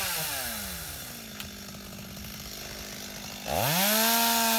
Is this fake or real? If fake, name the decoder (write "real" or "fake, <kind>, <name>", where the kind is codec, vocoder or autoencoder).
real